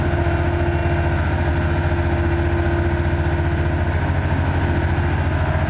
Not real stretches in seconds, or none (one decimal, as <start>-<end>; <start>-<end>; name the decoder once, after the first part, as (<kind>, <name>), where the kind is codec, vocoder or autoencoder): none